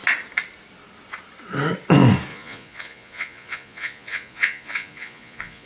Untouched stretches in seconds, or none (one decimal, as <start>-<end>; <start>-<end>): 0.0-2.3